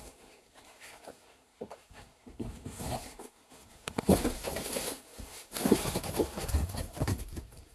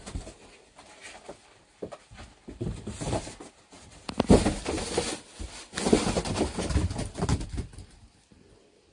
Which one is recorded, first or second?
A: second